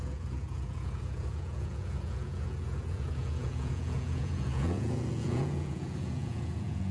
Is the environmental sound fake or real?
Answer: fake